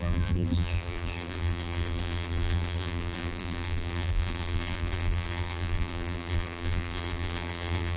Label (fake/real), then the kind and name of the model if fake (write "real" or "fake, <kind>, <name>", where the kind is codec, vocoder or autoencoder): fake, vocoder, BigVGAN v2